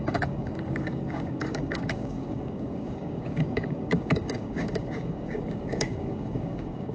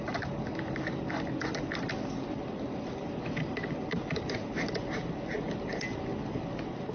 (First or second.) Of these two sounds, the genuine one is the second